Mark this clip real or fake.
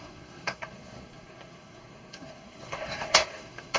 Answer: fake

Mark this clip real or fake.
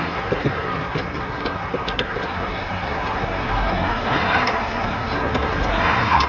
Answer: fake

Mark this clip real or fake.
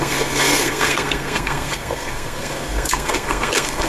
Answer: fake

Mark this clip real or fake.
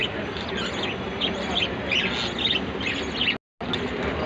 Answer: real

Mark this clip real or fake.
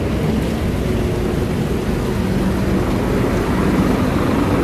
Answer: real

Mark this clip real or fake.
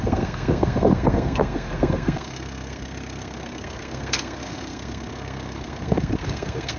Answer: fake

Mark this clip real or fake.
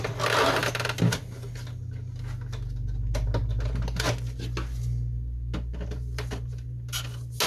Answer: real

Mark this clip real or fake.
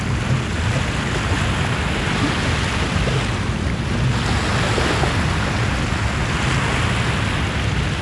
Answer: real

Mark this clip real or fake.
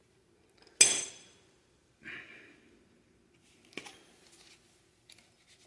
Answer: real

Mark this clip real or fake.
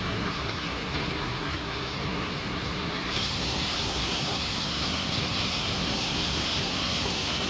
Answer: fake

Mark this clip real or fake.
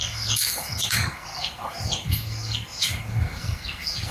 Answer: fake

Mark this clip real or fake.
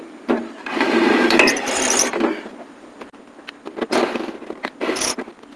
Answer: real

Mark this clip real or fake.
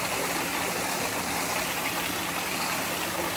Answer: real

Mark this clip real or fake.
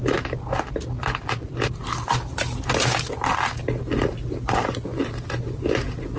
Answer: real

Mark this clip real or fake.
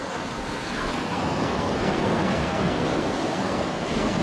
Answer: fake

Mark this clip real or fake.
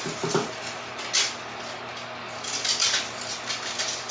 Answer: real